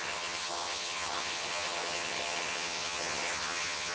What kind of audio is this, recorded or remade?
remade